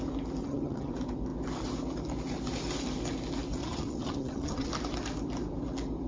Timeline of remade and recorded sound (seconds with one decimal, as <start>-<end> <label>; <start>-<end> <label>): 0.0-0.4 recorded; 0.4-0.9 remade; 0.9-3.6 recorded; 3.6-4.7 remade; 4.7-6.1 recorded

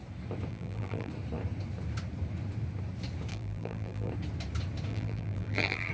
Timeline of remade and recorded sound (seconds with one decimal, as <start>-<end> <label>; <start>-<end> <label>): 0.0-0.5 recorded; 0.5-1.1 remade; 1.1-3.3 recorded; 3.3-4.1 remade; 4.1-4.9 recorded; 4.9-5.9 remade

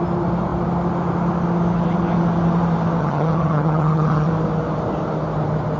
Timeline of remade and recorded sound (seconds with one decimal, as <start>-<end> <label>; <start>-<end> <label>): 0.0-3.0 recorded; 3.0-4.3 remade; 4.3-5.8 recorded

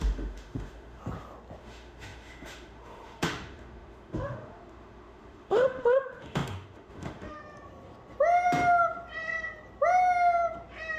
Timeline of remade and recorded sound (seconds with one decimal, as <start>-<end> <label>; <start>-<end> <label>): 0.0-1.0 remade; 1.0-1.6 recorded; 1.6-7.4 remade; 7.4-11.0 recorded

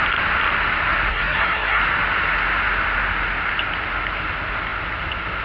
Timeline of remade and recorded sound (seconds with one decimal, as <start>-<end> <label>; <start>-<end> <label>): 0.0-1.1 recorded; 1.1-1.8 remade; 1.8-5.4 recorded